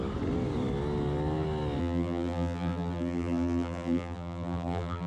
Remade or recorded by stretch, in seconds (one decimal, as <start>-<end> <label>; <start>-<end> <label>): 0.0-1.8 recorded; 1.8-5.1 remade